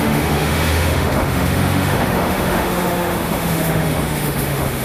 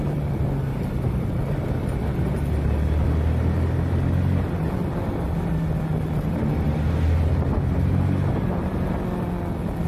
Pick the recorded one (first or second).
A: second